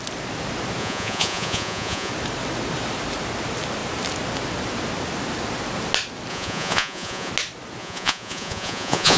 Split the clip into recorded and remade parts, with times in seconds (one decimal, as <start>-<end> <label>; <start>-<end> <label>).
0.0-0.8 recorded; 0.8-2.1 remade; 2.1-6.3 recorded; 6.3-7.3 remade; 7.3-7.8 recorded; 7.8-9.2 remade